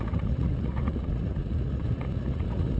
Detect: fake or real fake